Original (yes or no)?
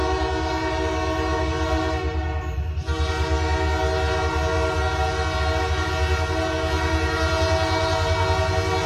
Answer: yes